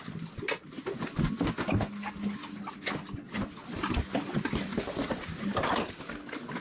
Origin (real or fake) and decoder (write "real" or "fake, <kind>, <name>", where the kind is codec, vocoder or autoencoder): real